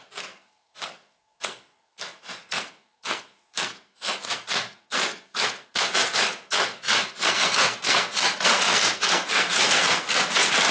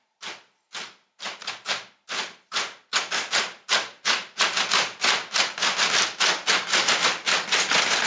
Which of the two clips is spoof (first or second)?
first